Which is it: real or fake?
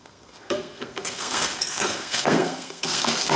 fake